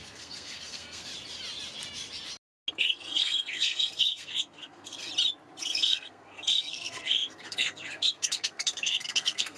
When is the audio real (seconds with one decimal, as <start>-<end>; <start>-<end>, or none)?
1.1-2.7; 5.1-5.6